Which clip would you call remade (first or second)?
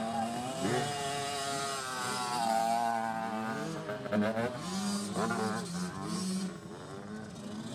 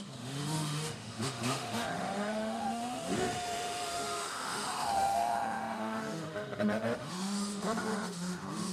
second